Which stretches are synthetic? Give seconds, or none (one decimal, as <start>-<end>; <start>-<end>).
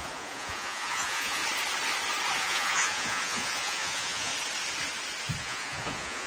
0.0-1.4; 2.4-4.3; 5.4-6.3